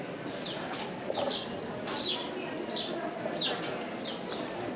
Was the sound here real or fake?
real